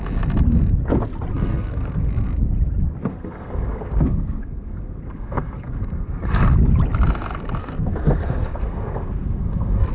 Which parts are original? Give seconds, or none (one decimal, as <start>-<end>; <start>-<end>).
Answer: 0.0-1.3; 2.1-3.1; 6.3-7.6